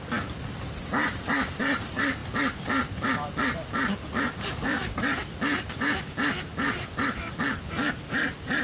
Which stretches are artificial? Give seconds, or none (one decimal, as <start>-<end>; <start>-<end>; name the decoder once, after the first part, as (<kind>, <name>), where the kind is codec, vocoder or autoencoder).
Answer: none